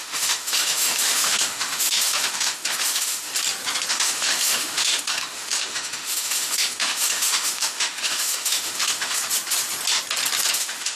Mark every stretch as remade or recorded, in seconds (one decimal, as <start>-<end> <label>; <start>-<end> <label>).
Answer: 0.0-3.3 remade; 3.3-3.9 recorded; 3.9-9.2 remade; 9.2-10.5 recorded; 10.5-11.0 remade

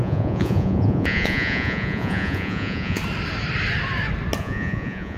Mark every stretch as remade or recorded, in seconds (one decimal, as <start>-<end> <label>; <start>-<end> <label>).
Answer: 0.0-3.0 remade; 3.0-4.4 recorded; 4.4-5.2 remade

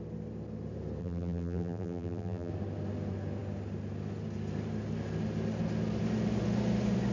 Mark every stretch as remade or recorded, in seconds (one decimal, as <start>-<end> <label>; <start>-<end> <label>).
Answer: 0.0-1.0 recorded; 1.0-2.5 remade; 2.5-7.1 recorded

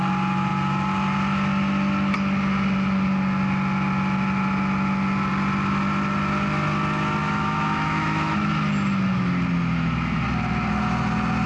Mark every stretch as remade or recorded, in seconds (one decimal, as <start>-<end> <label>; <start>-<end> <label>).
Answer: 0.0-7.2 recorded; 7.2-8.5 remade; 8.5-11.5 recorded

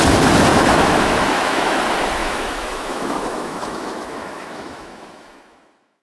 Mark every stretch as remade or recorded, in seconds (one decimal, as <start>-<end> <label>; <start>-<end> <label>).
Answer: 0.0-0.5 recorded; 0.5-1.8 remade; 1.8-2.2 recorded; 2.2-6.0 remade

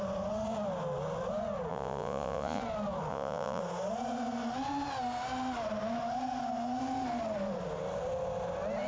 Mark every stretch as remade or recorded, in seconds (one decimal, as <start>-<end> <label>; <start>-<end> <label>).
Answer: 0.0-1.7 recorded; 1.7-2.6 remade; 2.6-3.1 recorded; 3.1-3.6 remade; 3.6-8.9 recorded

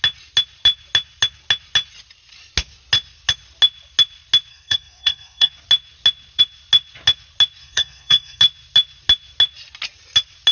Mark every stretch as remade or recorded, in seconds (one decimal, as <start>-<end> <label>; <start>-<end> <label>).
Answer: 0.0-4.5 recorded; 4.5-5.5 remade; 5.5-7.6 recorded; 7.6-8.4 remade; 8.4-10.5 recorded